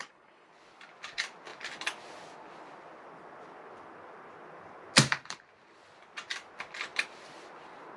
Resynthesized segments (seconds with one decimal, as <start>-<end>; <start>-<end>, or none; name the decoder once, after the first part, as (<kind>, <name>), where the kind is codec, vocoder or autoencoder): 0.0-0.5 (codec, HILCodec)